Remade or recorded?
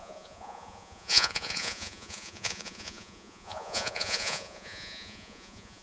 remade